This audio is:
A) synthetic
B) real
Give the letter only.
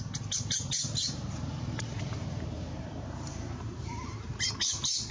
A